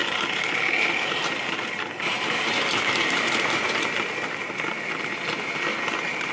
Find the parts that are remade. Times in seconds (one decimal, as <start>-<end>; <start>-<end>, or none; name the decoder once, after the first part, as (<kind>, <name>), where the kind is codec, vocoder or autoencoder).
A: 0.0-3.8 (vocoder, BigVGAN v2)